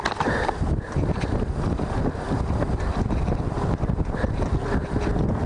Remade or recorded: recorded